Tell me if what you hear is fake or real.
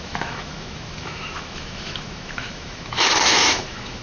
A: fake